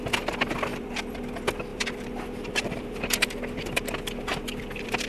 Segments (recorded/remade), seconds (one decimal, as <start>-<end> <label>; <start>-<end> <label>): 0.0-0.7 recorded; 0.7-1.2 remade; 1.2-1.7 recorded; 1.7-5.1 remade